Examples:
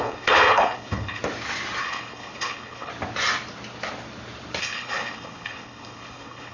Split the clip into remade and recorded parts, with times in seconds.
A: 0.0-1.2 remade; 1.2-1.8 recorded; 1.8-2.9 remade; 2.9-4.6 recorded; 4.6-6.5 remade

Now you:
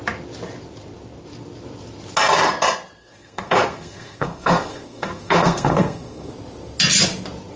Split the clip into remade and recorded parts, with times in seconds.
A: 0.0-3.0 recorded; 3.0-6.3 remade; 6.3-7.6 recorded

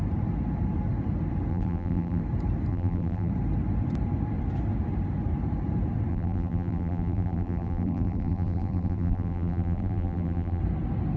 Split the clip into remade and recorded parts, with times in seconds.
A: 0.0-1.5 recorded; 1.5-2.2 remade; 2.2-2.7 recorded; 2.7-3.3 remade; 3.3-6.1 recorded; 6.1-10.6 remade; 10.6-11.2 recorded

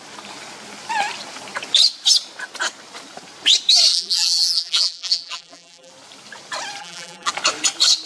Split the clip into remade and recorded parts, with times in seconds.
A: 0.0-3.9 recorded; 3.9-5.9 remade; 5.9-6.8 recorded; 6.8-7.3 remade; 7.3-8.1 recorded

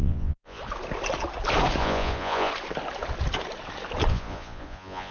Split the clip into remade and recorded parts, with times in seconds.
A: 0.0-0.6 remade; 0.6-1.8 recorded; 1.8-2.5 remade; 2.5-4.1 recorded; 4.1-5.1 remade

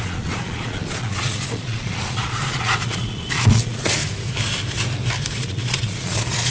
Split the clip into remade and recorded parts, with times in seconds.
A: 0.0-4.0 remade; 4.0-5.3 recorded; 5.3-6.5 remade

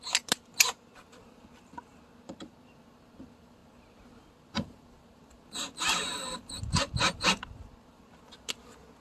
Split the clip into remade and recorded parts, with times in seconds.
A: 0.0-9.0 recorded

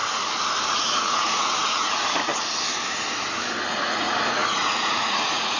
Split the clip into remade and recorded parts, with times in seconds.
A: 0.0-0.6 recorded; 0.6-2.3 remade; 2.3-3.8 recorded; 3.8-5.6 remade